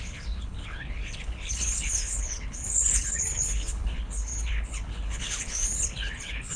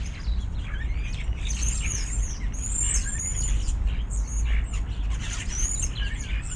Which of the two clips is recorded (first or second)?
second